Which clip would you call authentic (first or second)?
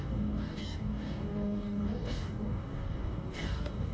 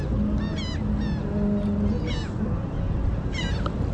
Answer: second